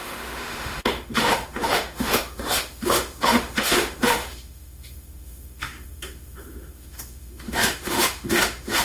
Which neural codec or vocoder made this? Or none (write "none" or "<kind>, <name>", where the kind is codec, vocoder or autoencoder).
autoencoder, DAC-VAE